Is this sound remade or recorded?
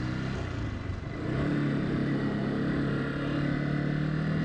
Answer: recorded